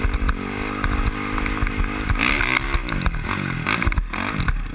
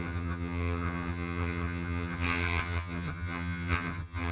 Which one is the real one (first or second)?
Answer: first